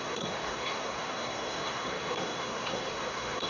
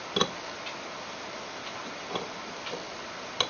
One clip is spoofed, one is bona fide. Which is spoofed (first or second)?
first